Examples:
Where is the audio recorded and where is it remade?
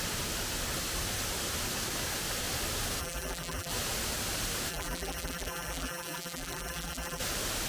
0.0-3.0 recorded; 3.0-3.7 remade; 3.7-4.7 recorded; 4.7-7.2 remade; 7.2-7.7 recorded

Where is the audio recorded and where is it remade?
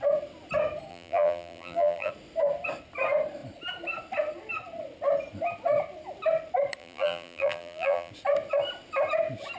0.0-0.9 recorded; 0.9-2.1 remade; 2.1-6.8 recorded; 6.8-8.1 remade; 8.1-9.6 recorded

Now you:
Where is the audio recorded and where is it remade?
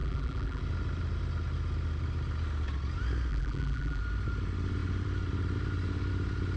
0.0-0.6 remade; 0.6-3.3 recorded; 3.3-4.0 remade; 4.0-6.6 recorded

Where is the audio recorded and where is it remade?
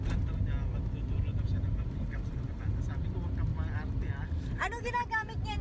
0.0-1.3 recorded; 1.3-2.6 remade; 2.6-5.6 recorded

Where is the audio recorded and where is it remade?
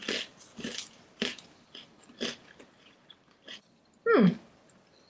0.0-0.5 recorded; 0.5-3.6 remade; 3.6-5.1 recorded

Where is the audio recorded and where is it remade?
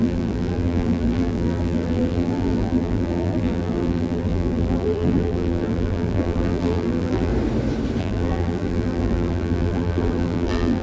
0.0-7.3 remade; 7.3-8.0 recorded; 8.0-10.8 remade